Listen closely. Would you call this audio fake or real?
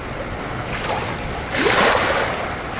real